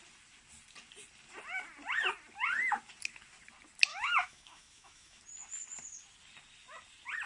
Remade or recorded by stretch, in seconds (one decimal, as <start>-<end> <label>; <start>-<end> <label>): 0.0-3.9 recorded; 3.9-5.2 remade; 5.2-7.3 recorded